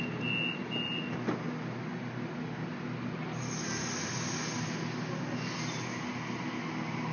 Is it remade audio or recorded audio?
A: recorded